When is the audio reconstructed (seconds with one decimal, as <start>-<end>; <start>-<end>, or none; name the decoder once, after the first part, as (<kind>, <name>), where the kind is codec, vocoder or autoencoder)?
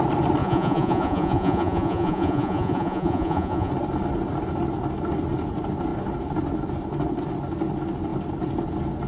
0.4-3.7 (vocoder, Vocos)